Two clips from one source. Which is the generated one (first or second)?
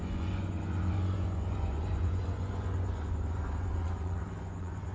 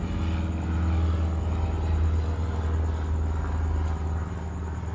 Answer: first